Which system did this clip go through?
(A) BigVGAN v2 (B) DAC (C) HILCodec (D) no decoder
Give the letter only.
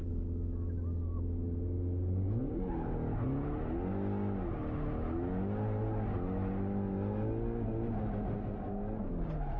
D